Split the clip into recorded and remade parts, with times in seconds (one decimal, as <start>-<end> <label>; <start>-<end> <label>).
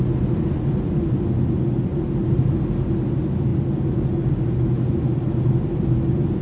0.0-6.4 recorded